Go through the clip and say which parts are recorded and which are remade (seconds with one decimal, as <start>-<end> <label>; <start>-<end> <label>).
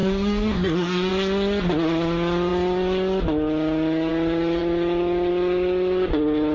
0.0-1.1 remade; 1.1-6.5 recorded